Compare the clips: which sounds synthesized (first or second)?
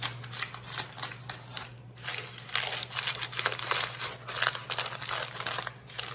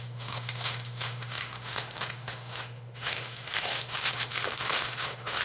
second